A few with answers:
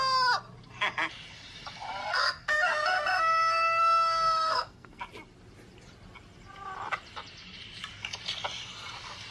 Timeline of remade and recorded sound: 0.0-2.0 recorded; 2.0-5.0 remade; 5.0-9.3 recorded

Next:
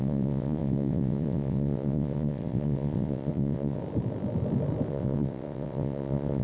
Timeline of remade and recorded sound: 0.0-3.8 remade; 3.8-4.9 recorded; 4.9-6.4 remade

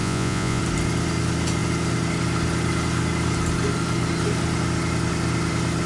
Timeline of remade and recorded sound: 0.0-0.6 remade; 0.6-5.9 recorded

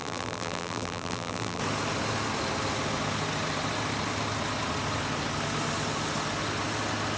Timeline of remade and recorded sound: 0.0-1.6 remade; 1.6-7.2 recorded